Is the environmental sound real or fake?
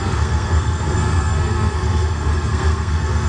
fake